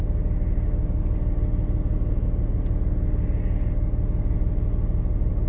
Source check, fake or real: real